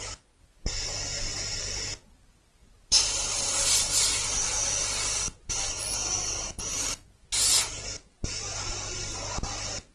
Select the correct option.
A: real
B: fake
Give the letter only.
A